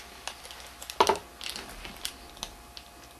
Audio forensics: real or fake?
real